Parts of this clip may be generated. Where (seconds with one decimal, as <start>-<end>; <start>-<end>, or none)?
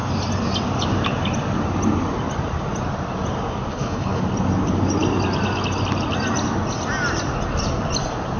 3.7-4.2